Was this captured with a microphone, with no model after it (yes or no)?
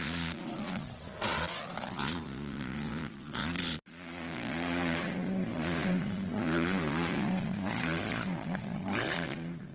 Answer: no